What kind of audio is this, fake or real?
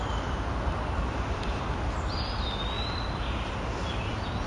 real